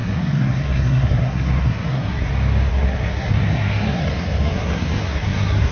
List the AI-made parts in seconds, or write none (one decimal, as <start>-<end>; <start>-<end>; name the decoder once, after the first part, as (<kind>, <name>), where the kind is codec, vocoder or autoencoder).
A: 0.0-2.3 (codec, SNAC); 2.7-5.7